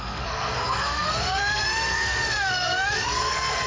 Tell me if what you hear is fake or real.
fake